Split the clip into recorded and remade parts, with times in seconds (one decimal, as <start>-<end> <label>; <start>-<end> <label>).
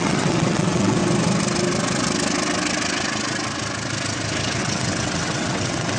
0.0-1.0 remade; 1.0-4.6 recorded; 4.6-6.0 remade